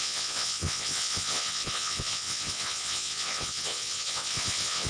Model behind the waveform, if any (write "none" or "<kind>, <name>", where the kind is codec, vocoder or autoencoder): vocoder, WaveNeXt